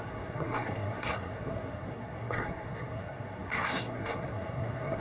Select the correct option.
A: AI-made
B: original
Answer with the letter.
A